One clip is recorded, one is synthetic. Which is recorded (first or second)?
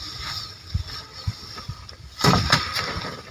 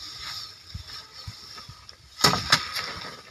second